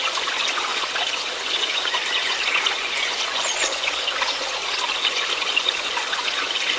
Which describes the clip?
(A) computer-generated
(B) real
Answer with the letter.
A